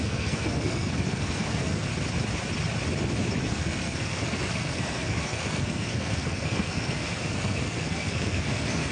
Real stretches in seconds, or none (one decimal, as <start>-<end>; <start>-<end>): 1.9-3.4

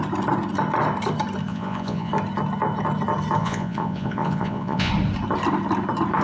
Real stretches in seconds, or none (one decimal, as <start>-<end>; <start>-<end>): 0.0-1.5; 2.1-3.4; 4.9-6.2

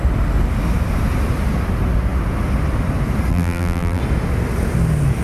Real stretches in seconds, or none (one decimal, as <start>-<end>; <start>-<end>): 0.0-3.3; 4.0-5.2

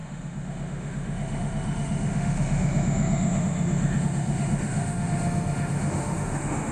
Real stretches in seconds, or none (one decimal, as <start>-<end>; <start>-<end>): none

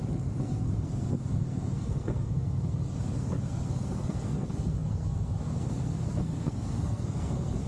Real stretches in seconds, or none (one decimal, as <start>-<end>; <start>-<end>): none

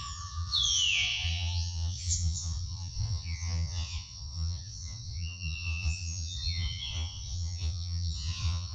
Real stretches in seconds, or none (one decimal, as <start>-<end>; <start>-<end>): none

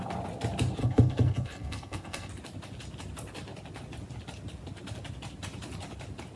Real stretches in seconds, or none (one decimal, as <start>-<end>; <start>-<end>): 0.0-0.8; 2.3-6.4